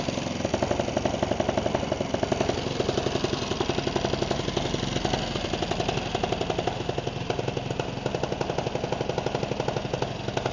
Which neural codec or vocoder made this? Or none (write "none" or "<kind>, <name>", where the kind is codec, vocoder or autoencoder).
none